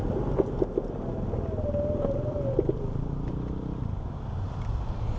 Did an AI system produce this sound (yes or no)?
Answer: no